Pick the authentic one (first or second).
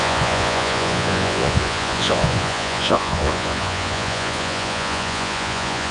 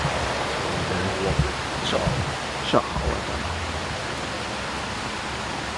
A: second